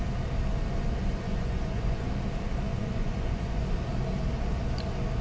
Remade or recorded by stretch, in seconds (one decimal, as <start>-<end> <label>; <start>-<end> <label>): 0.0-1.0 recorded; 1.0-2.1 remade; 2.1-2.7 recorded; 2.7-3.6 remade; 3.6-5.2 recorded